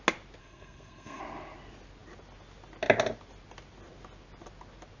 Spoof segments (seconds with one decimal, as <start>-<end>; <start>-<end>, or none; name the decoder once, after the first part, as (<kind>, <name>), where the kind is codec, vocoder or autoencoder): 0.4-1.2 (codec, SNAC)